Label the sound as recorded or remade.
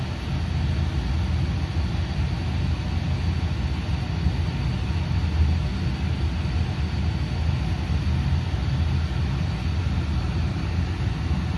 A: recorded